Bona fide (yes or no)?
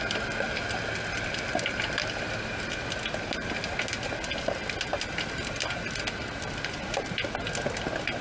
yes